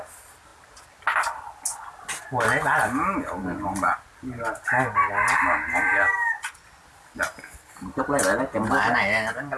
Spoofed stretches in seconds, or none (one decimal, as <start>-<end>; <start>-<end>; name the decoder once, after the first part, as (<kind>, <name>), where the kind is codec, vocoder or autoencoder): none